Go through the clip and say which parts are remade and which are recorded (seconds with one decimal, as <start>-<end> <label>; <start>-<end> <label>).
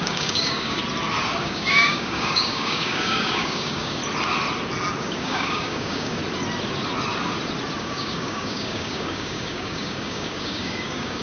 0.0-0.8 remade; 0.8-1.4 recorded; 1.4-4.0 remade; 4.0-5.0 recorded; 5.0-6.2 remade; 6.2-7.8 recorded; 7.8-11.2 remade